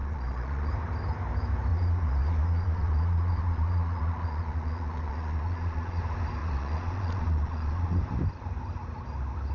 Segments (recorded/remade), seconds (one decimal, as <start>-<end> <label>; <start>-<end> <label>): 0.0-0.7 remade; 0.7-1.7 recorded; 1.7-6.0 remade; 6.0-6.4 recorded; 6.4-8.0 remade; 8.0-9.5 recorded